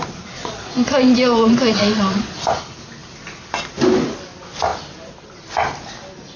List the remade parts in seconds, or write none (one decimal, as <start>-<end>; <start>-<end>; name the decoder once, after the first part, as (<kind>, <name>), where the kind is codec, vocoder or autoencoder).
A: 0.4-2.3 (vocoder, Vocos)